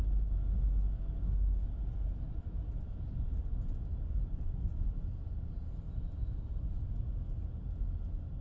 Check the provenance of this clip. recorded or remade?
recorded